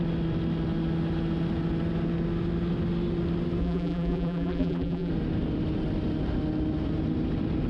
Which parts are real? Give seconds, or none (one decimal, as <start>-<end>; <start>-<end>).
0.0-3.6; 5.1-7.7